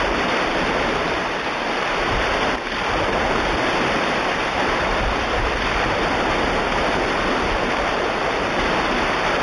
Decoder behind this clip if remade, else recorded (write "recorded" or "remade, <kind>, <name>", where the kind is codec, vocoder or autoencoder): recorded